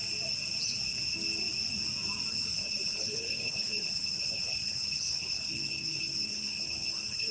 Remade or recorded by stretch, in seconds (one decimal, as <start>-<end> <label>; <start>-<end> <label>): 0.0-2.3 recorded; 2.3-7.3 remade